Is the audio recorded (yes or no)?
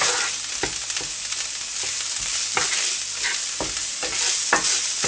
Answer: yes